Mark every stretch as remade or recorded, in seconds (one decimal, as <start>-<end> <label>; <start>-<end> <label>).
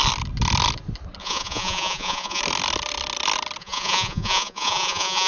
0.0-1.2 recorded; 1.2-2.4 remade; 2.4-3.6 recorded; 3.6-5.3 remade